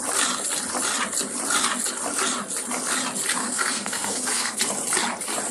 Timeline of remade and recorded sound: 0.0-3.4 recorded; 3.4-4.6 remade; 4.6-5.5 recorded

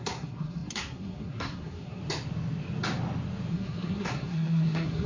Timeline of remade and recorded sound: 0.0-2.0 remade; 2.0-3.5 recorded; 3.5-5.1 remade